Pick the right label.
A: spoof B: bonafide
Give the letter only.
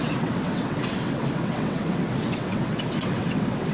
A